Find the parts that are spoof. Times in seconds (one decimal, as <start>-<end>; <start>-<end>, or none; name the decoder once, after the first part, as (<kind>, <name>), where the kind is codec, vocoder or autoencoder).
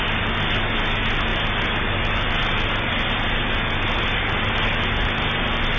none